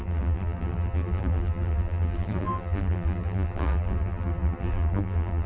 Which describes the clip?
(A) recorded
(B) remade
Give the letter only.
B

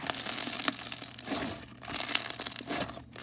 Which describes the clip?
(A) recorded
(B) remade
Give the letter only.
A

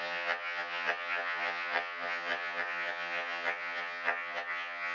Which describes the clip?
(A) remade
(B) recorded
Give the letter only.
A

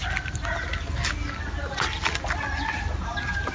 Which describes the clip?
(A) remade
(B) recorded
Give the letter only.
B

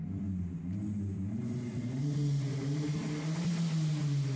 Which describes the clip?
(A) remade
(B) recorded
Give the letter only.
B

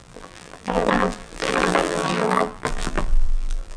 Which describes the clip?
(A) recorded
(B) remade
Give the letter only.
B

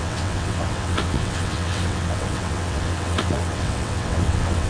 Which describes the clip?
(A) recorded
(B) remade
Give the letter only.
B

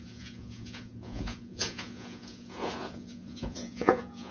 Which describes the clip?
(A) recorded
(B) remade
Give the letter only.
B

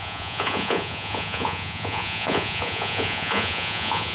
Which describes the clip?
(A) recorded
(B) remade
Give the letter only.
B